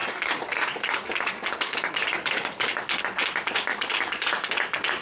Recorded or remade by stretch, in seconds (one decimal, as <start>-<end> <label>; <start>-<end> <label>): 0.0-3.0 remade; 3.0-3.7 recorded; 3.7-4.5 remade; 4.5-5.0 recorded